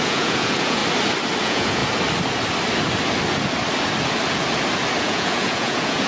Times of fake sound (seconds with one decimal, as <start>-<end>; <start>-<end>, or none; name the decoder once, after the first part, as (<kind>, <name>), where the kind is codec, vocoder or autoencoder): 0.0-0.8 (vocoder, Vocos); 1.4-1.8; 5.0-6.1